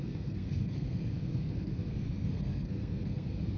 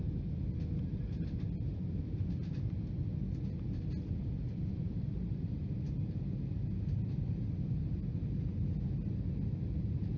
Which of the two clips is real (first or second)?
second